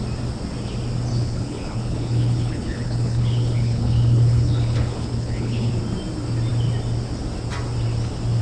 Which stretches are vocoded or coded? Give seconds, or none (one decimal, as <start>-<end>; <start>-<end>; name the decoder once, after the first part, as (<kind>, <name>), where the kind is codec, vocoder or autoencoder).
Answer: 1.1-5.7 (codec, HILCodec)

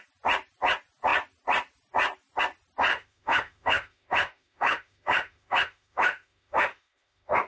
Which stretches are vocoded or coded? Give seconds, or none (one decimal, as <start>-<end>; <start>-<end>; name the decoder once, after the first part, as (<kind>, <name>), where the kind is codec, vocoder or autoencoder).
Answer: 2.9-7.5 (autoencoder, DAC-VAE)

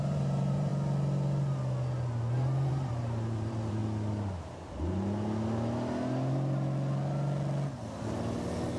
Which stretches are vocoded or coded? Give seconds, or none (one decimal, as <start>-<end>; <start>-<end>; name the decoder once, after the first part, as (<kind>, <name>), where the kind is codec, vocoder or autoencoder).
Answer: 0.0-0.7 (vocoder, BigVGAN v2); 2.7-3.8

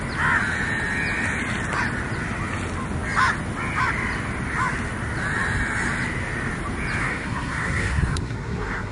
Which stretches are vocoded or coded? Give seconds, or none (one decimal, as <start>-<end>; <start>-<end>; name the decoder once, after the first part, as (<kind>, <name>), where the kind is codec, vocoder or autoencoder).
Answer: 7.0-8.9 (codec, SNAC)

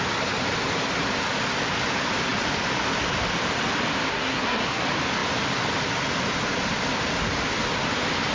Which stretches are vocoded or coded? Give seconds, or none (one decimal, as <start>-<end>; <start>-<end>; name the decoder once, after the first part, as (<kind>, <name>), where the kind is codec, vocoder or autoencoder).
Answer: 4.1-4.8 (codec, SNAC)